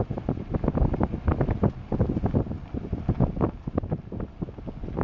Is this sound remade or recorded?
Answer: recorded